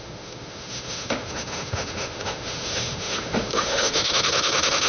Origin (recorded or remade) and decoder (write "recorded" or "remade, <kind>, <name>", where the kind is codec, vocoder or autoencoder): remade, autoencoder, DAC-VAE